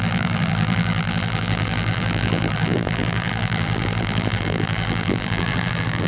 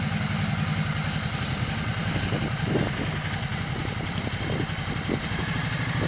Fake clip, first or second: first